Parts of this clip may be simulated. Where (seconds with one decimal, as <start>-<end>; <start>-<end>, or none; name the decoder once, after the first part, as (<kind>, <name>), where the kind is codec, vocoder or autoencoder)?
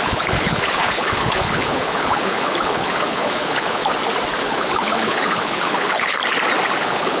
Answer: 0.0-3.8 (codec, HILCodec); 4.4-6.2; 6.8-7.2